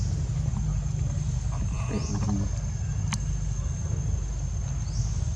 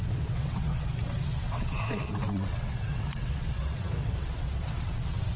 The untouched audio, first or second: first